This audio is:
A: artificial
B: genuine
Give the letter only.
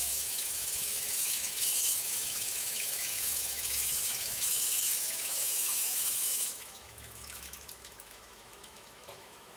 A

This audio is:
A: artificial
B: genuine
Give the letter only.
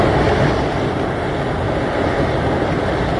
B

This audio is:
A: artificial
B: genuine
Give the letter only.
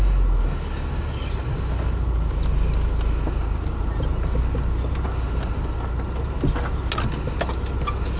B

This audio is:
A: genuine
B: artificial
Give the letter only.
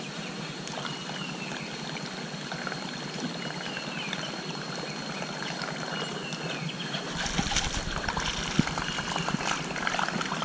A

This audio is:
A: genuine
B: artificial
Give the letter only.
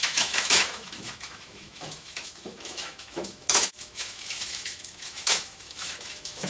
B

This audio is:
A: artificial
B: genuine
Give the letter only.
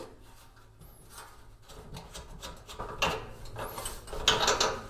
B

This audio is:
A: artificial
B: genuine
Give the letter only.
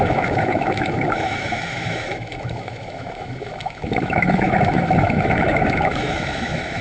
A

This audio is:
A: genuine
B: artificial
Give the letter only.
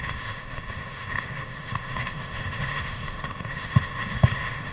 B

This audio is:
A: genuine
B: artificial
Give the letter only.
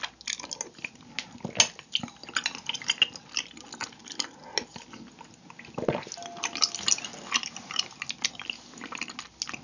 A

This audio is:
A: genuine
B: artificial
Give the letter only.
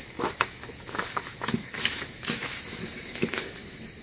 B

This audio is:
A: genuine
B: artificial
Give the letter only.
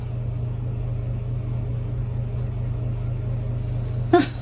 A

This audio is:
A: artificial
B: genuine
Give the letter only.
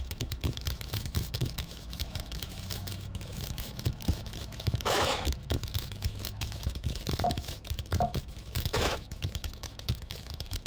A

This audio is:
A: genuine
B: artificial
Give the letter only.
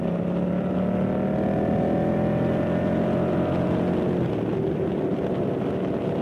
A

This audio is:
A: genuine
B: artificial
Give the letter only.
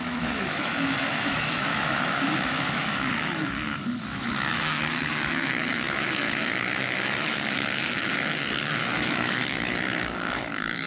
B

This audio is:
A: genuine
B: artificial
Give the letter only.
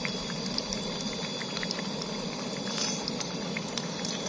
A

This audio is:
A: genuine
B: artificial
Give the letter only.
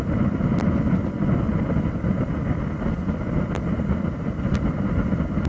A